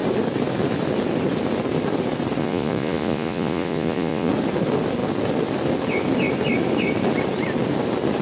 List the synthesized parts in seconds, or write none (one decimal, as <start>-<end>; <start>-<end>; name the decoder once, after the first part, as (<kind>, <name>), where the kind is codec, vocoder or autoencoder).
2.4-4.3 (vocoder, Vocos)